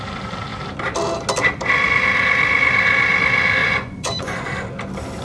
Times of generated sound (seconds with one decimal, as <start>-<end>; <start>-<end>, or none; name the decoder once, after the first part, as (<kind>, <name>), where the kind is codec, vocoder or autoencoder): 3.6-4.5 (vocoder, Vocos)